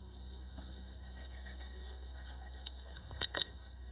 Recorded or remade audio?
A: remade